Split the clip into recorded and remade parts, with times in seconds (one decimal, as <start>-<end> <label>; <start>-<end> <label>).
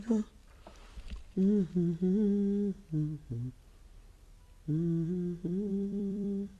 0.0-5.7 recorded; 5.7-6.6 remade